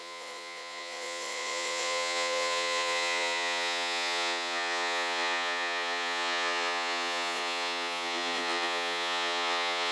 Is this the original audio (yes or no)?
no